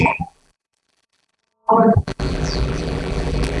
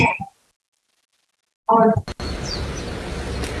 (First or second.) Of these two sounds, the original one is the second